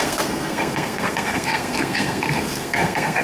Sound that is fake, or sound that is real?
fake